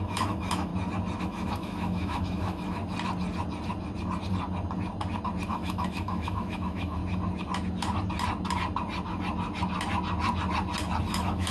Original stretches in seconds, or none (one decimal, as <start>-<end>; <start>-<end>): 0.7-1.2; 2.8-5.5; 7.0-11.1